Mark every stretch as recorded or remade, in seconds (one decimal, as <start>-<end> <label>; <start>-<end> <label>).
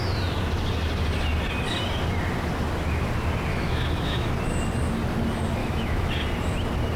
0.0-3.5 recorded; 3.5-4.3 remade; 4.3-5.6 recorded; 5.6-6.1 remade; 6.1-7.0 recorded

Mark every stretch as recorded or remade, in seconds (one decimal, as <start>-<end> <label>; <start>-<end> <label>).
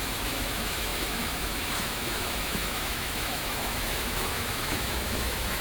0.0-5.6 remade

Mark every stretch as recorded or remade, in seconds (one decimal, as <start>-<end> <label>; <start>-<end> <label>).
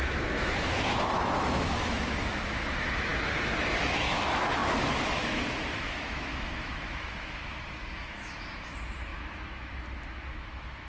0.0-3.1 remade; 3.1-3.8 recorded; 3.8-10.9 remade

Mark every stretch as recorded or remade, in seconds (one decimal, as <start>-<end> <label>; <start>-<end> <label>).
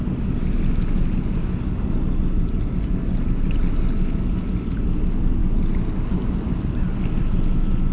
0.0-7.9 recorded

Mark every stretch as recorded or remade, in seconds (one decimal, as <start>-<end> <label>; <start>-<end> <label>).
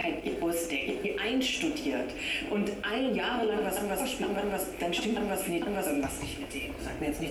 0.0-3.6 recorded; 3.6-6.7 remade; 6.7-7.3 recorded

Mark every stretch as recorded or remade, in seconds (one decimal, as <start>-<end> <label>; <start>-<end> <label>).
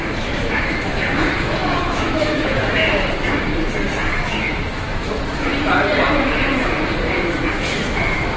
0.0-3.5 remade; 3.5-4.1 recorded; 4.1-5.5 remade; 5.5-6.1 recorded; 6.1-8.4 remade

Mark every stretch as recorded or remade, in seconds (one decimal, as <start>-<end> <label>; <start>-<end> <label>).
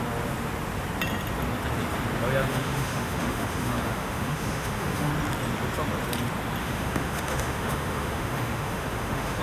0.0-2.5 recorded; 2.5-5.1 remade; 5.1-6.6 recorded; 6.6-9.4 remade